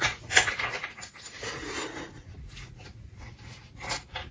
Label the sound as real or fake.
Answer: fake